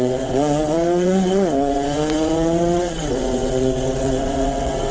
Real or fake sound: fake